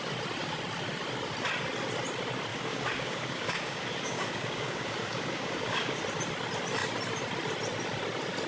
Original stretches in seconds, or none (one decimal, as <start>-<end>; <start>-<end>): 0.0-2.5; 6.0-8.5